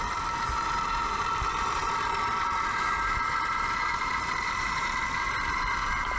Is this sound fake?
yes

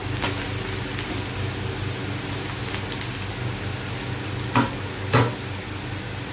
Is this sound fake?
no